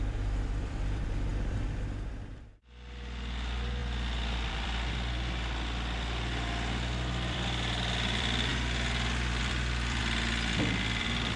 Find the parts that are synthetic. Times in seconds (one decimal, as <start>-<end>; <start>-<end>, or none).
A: 0.0-3.8; 4.5-8.5; 9.4-10.0; 11.0-11.4